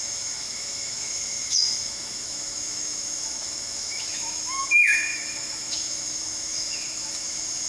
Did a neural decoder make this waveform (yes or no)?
yes